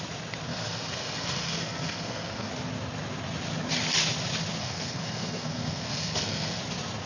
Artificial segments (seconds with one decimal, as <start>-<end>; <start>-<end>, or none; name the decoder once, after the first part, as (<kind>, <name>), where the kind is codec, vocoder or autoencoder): 0.5-2.5 (codec, SNAC); 4.6-6.6